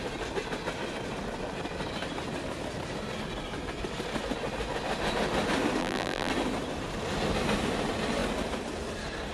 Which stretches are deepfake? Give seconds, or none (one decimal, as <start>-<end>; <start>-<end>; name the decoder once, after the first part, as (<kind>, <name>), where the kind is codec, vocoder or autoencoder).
5.8-6.3 (vocoder, BigVGAN v2)